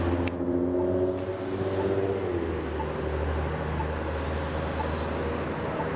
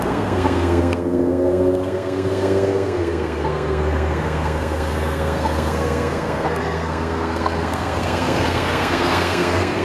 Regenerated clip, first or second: second